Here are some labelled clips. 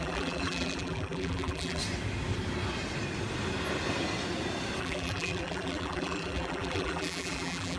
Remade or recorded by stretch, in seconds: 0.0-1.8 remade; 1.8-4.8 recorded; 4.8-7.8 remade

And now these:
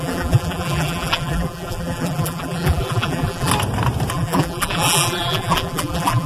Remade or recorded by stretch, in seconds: 0.0-3.5 remade; 3.5-4.1 recorded; 4.1-6.3 remade

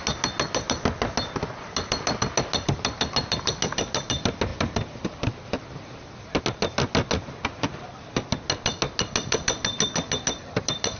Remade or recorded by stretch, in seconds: 0.0-11.0 recorded

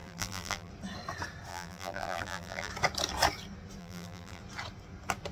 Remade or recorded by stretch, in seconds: 0.0-0.7 remade; 0.7-1.5 recorded; 1.5-2.7 remade; 2.7-3.8 recorded; 3.8-4.4 remade; 4.4-5.3 recorded

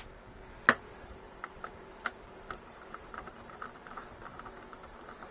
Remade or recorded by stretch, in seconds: 0.0-0.9 recorded; 0.9-4.1 remade; 4.1-5.3 recorded

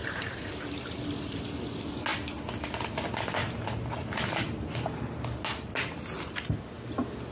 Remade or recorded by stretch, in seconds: 0.0-1.5 remade; 1.5-3.4 recorded; 3.4-5.0 remade; 5.0-7.3 recorded

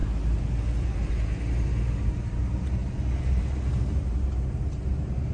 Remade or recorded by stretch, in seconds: 0.0-2.1 recorded; 2.1-2.8 remade; 2.8-3.3 recorded; 3.3-5.3 remade

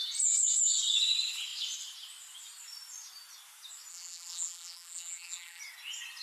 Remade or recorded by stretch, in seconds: 0.0-3.9 recorded; 3.9-5.6 remade; 5.6-6.2 recorded